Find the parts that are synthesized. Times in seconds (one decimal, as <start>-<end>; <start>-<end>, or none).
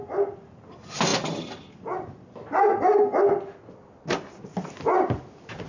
none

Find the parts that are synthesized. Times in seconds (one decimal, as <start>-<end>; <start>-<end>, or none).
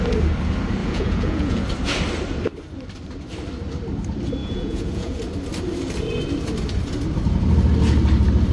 0.8-1.6; 4.4-5.2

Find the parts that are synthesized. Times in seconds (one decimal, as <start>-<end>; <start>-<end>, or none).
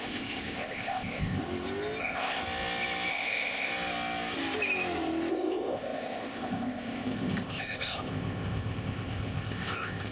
0.0-1.4; 2.0-2.4; 3.1-3.7; 5.3-10.1